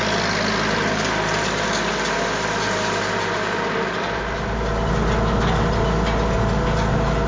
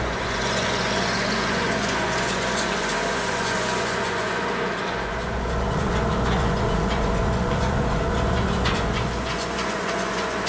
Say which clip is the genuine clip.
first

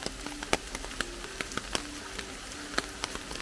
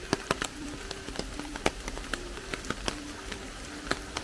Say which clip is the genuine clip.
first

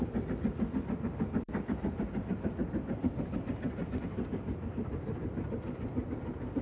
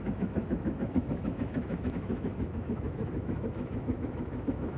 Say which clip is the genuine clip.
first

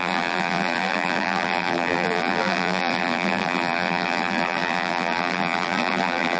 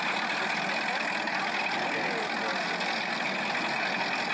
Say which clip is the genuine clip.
second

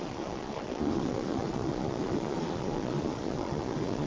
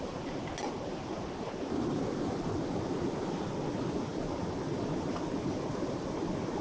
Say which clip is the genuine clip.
second